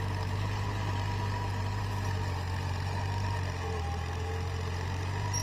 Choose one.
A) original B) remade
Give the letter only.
A